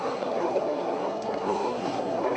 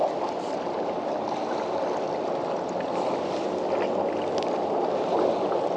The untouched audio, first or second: second